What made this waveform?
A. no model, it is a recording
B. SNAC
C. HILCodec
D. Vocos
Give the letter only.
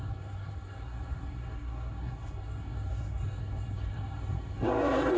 B